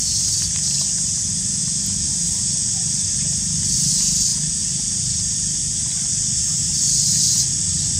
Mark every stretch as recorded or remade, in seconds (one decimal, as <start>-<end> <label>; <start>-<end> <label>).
0.0-8.0 recorded